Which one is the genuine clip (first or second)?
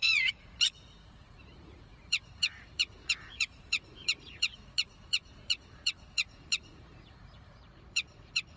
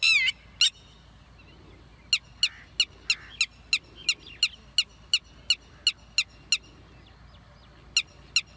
second